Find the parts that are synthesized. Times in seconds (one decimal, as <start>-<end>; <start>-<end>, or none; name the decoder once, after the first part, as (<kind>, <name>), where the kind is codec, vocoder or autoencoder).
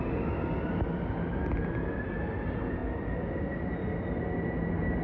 none